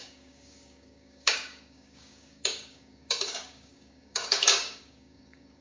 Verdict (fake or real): fake